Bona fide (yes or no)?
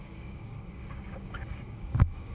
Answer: no